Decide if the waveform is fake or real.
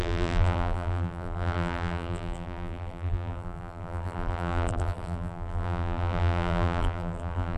fake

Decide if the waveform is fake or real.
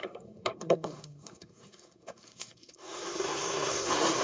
fake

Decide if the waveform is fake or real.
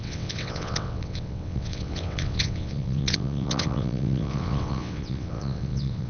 fake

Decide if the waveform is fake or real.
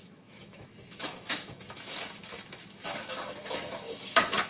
fake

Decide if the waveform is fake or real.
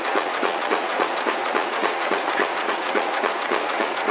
fake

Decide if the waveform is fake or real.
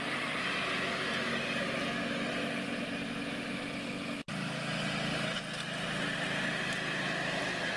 real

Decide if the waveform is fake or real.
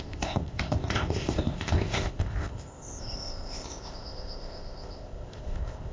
fake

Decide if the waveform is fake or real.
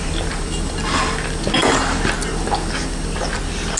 real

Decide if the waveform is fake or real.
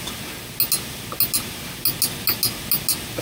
real